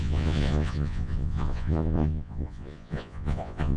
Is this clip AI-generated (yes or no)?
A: yes